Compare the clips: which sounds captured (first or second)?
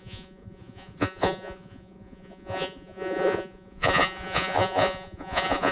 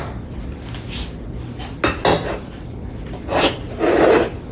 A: second